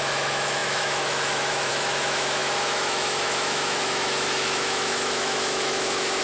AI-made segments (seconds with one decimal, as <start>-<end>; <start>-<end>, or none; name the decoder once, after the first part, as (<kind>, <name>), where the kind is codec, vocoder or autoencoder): 0.0-6.2 (autoencoder, DAC-VAE)